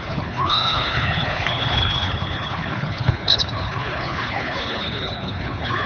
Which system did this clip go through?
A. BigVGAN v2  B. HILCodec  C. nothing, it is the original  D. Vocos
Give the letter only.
B